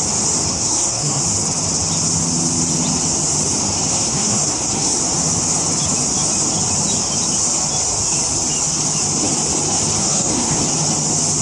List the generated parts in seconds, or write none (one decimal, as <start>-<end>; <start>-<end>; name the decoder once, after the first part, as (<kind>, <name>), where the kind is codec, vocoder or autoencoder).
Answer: 0.5-1.2 (codec, SNAC); 3.9-5.0; 10.0-10.6